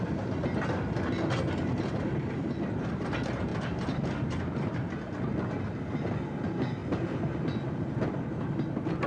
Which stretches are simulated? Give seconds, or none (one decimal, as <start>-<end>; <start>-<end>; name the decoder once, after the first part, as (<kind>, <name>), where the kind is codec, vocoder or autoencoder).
3.5-4.1 (vocoder, BigVGAN v2)